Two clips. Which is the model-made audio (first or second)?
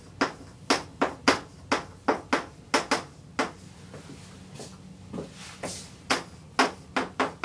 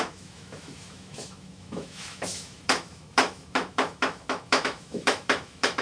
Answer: second